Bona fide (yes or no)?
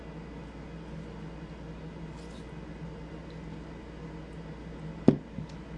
yes